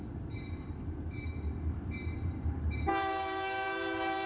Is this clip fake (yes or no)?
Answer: yes